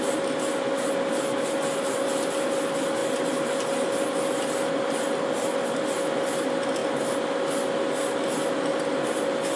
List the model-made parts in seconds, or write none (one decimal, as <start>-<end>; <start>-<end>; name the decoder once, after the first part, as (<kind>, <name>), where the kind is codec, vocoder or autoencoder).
none

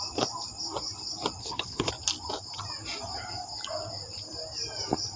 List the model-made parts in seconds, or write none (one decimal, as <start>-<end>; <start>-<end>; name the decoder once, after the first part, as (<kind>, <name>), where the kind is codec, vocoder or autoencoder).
1.4-1.9 (codec, HILCodec)

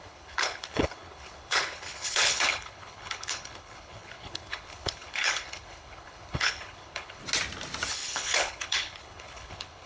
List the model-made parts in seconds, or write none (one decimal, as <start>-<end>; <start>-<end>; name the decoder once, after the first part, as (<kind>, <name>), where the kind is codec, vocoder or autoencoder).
0.0-7.2 (codec, HILCodec); 7.9-9.9

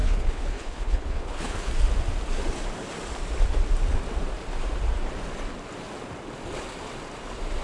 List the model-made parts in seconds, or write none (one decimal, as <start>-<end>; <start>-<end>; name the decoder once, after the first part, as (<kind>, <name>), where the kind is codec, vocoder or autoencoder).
0.0-1.7 (codec, HILCodec)

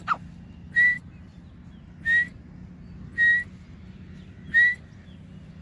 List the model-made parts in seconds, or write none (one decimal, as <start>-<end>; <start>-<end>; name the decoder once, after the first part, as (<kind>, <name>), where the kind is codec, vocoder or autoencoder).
none